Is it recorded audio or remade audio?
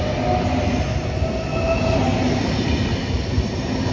recorded